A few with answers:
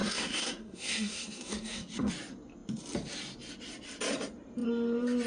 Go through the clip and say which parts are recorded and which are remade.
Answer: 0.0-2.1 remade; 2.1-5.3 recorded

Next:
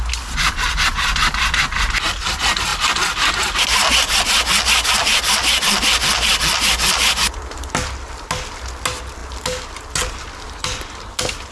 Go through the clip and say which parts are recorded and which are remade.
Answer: 0.0-11.5 recorded

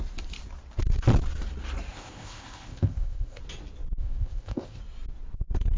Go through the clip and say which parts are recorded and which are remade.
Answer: 0.0-1.9 recorded; 1.9-3.4 remade; 3.4-4.0 recorded; 4.0-4.8 remade; 4.8-5.8 recorded

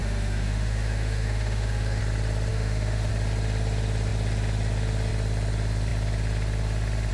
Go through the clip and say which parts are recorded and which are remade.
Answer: 0.0-2.0 remade; 2.0-2.5 recorded; 2.5-3.1 remade; 3.1-7.1 recorded

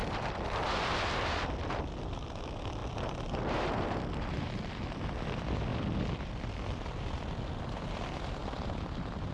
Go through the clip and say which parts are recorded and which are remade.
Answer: 0.0-5.7 recorded; 5.7-7.5 remade; 7.5-9.3 recorded

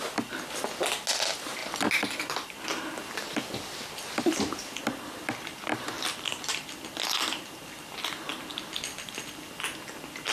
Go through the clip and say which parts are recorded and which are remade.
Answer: 0.0-1.6 recorded; 1.6-6.8 remade; 6.8-10.3 recorded